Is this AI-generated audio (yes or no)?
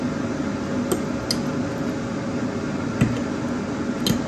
no